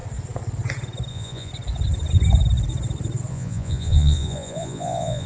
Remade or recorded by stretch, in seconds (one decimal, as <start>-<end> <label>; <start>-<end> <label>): 0.0-1.1 recorded; 1.1-1.5 remade; 1.5-3.3 recorded; 3.3-5.3 remade